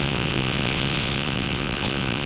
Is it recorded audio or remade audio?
remade